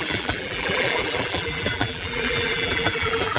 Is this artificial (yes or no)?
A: yes